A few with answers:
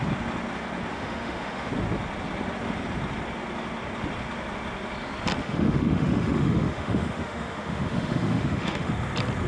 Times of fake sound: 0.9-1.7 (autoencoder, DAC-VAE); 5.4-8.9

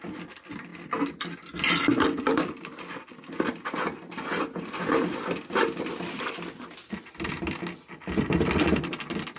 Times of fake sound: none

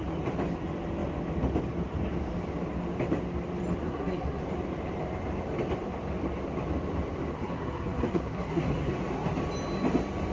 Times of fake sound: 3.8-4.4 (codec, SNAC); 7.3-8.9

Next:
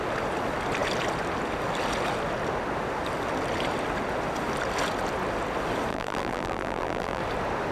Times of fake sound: 5.9-7.2 (vocoder, BigVGAN v2)